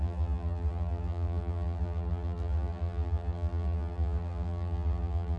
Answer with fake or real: fake